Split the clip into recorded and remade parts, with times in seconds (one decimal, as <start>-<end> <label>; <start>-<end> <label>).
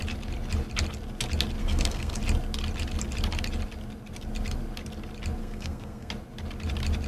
0.0-1.6 recorded; 1.6-2.2 remade; 2.2-5.4 recorded; 5.4-6.1 remade; 6.1-7.1 recorded